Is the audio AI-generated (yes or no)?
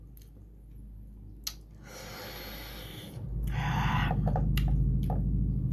no